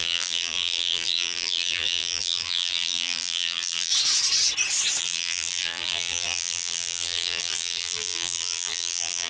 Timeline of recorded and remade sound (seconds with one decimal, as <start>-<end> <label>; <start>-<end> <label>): 0.0-3.9 remade; 3.9-5.0 recorded; 5.0-9.3 remade

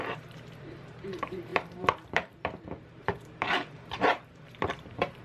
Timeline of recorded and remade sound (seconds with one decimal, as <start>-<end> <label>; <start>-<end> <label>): 0.0-5.2 remade

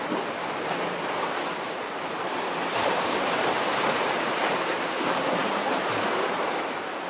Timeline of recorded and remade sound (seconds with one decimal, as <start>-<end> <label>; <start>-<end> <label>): 0.0-2.7 recorded; 2.7-4.7 remade; 4.7-5.4 recorded; 5.4-6.5 remade; 6.5-7.1 recorded